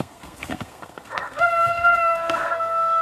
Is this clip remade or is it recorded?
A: remade